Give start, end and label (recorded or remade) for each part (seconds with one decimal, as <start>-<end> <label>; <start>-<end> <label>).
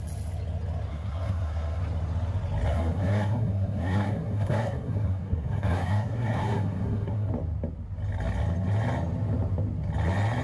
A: 0.0-0.9 recorded; 0.9-1.8 remade; 1.8-2.7 recorded; 2.7-7.3 remade; 7.3-10.4 recorded